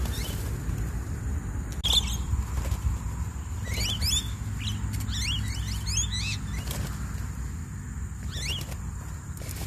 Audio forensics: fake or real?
real